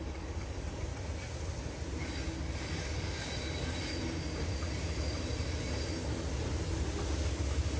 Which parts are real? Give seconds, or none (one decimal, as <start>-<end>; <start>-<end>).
0.9-2.6; 3.3-7.8